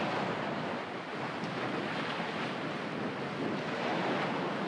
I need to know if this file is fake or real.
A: real